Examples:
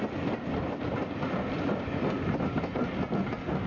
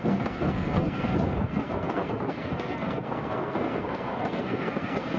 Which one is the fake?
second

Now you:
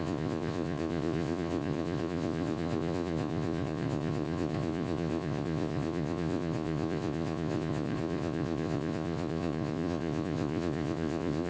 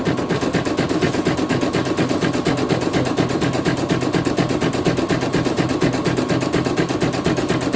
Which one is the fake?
first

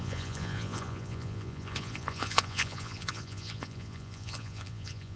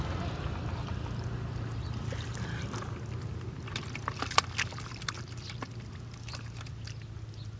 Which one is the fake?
first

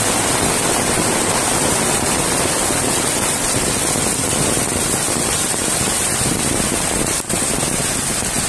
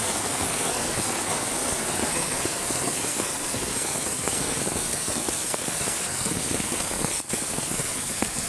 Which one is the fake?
second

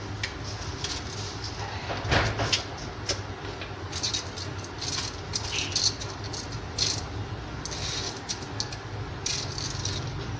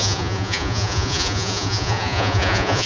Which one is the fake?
second